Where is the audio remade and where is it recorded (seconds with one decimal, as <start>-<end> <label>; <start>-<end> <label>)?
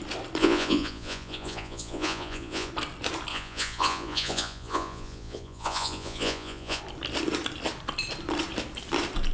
0.0-0.4 recorded; 0.4-2.7 remade; 2.7-3.3 recorded; 3.3-6.8 remade; 6.8-9.3 recorded